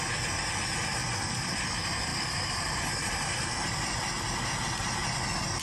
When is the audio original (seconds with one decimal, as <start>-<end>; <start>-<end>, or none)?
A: 0.0-2.1; 3.7-5.6